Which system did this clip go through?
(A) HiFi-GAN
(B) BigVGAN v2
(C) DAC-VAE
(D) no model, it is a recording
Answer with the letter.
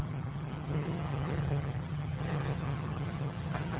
A